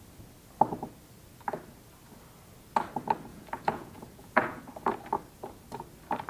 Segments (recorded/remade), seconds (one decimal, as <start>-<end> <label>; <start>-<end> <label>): 0.0-3.3 recorded; 3.3-4.6 remade; 4.6-6.3 recorded